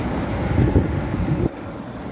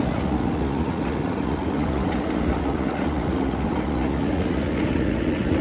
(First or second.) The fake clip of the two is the second